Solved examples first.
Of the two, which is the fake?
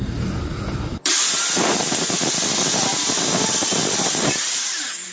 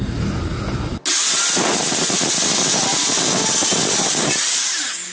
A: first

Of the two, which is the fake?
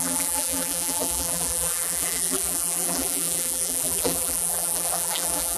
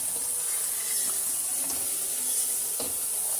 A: first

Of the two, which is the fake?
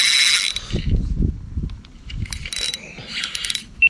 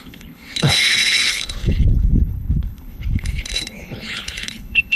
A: second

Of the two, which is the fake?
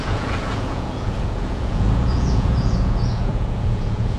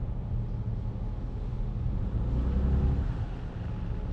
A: first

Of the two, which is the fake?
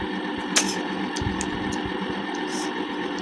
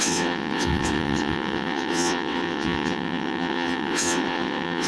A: second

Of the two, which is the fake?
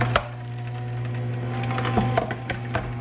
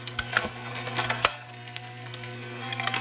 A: second